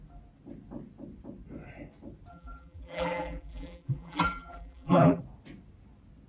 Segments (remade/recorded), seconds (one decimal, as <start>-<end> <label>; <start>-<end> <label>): 0.0-2.3 recorded; 2.3-5.2 remade; 5.2-6.3 recorded